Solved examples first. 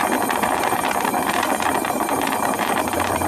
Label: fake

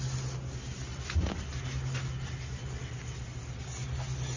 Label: real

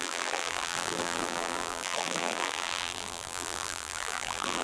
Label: fake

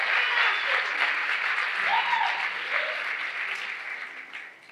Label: real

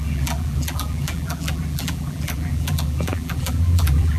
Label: fake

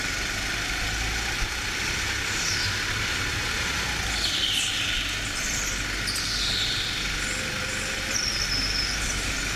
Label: real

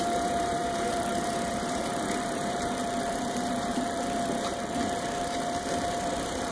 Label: fake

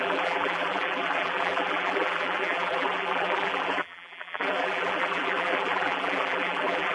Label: fake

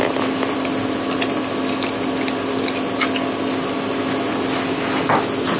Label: real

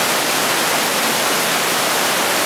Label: real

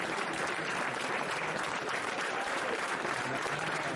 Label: fake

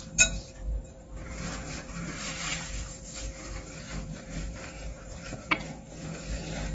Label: fake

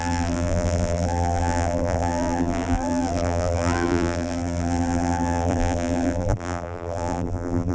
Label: fake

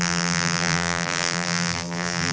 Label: fake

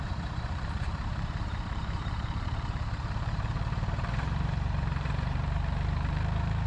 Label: fake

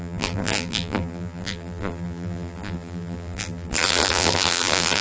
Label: fake